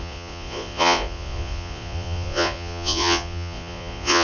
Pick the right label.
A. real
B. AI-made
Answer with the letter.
B